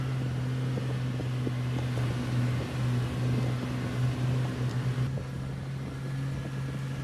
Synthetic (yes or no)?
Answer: no